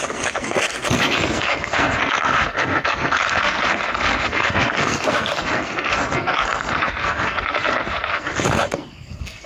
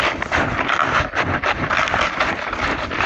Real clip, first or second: second